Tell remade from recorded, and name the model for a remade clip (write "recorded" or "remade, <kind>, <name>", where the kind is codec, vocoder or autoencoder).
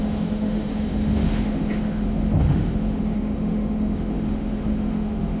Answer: remade, autoencoder, DAC-VAE